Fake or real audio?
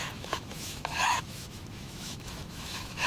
fake